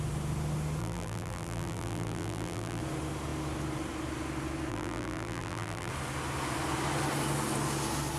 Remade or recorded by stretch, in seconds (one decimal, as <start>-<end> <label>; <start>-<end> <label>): 0.0-0.8 recorded; 0.8-2.8 remade; 2.8-4.7 recorded; 4.7-5.9 remade; 5.9-8.2 recorded